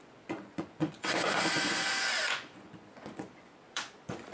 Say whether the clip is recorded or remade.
remade